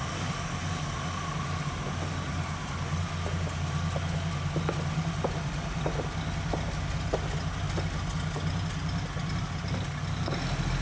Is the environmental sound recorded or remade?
recorded